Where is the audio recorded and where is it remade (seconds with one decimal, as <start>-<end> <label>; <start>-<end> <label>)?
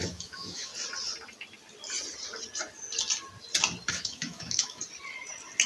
0.0-0.7 remade; 0.7-3.9 recorded; 3.9-4.8 remade; 4.8-5.7 recorded